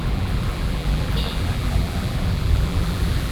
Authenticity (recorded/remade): remade